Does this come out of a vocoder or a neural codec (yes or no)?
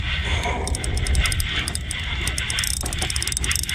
no